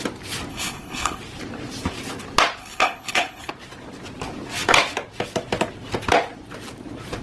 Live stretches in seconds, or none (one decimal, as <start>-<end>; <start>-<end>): 0.0-0.5; 1.2-2.6; 3.5-7.2